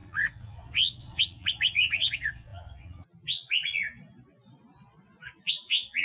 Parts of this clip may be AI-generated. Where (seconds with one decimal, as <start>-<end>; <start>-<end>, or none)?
0.0-6.0